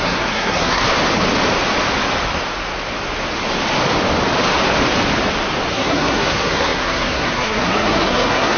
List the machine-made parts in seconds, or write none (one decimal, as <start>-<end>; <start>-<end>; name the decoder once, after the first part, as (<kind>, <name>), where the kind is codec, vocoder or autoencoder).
0.0-0.8 (codec, SNAC); 5.7-8.6